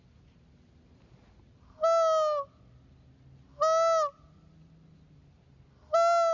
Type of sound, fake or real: real